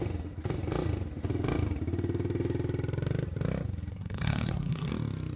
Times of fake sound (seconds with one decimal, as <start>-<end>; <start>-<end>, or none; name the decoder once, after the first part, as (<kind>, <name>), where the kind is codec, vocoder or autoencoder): 3.9-4.9 (codec, SNAC)